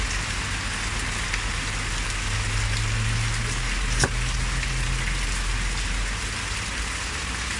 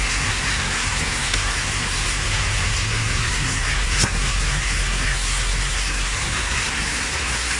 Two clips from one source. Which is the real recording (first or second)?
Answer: first